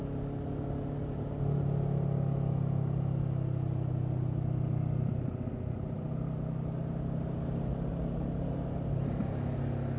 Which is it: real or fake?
real